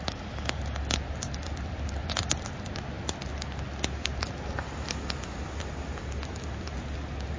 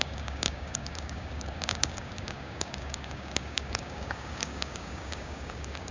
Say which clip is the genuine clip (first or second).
first